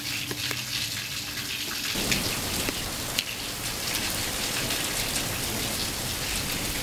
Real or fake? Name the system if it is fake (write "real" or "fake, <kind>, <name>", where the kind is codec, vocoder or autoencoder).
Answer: real